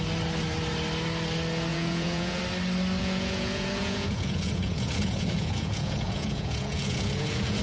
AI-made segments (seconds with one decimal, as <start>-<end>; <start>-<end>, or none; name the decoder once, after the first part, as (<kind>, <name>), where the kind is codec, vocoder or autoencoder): 1.7-2.4 (vocoder, Vocos); 3.0-7.6